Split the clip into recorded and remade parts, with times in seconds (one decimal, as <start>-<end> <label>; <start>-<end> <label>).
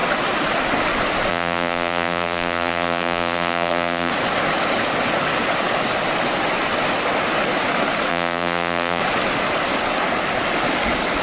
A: 0.0-1.3 recorded; 1.3-4.1 remade; 4.1-8.1 recorded; 8.1-9.0 remade; 9.0-11.2 recorded